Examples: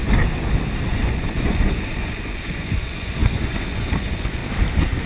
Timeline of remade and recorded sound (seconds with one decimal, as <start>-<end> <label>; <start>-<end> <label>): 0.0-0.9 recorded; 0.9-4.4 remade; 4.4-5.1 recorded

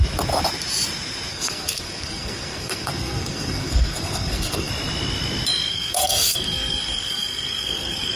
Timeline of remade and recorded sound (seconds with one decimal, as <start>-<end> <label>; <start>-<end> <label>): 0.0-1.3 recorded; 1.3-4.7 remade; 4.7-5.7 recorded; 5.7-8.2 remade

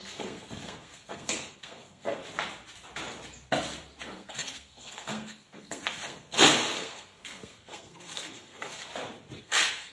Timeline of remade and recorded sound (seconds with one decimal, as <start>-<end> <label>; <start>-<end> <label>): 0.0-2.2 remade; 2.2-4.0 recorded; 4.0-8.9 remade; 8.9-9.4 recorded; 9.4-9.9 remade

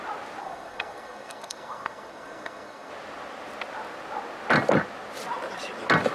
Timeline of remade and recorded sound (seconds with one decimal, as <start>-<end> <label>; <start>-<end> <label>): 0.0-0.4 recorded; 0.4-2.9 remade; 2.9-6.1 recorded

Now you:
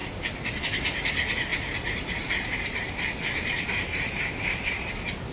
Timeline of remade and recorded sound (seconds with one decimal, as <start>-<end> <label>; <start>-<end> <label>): 0.0-0.6 remade; 0.6-1.5 recorded; 1.5-4.2 remade; 4.2-5.3 recorded